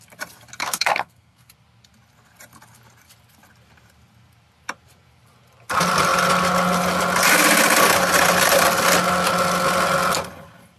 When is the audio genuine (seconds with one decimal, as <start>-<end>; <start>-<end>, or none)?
0.0-0.6; 1.5-10.8